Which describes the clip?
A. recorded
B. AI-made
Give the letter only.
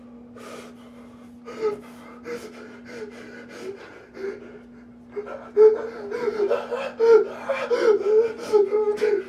A